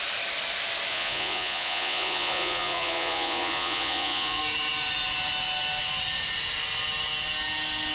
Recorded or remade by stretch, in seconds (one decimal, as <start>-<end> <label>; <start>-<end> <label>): 0.0-0.9 recorded; 0.9-4.4 remade; 4.4-7.9 recorded